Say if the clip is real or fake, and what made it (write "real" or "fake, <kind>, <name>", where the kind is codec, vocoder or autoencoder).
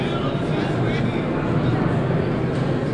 real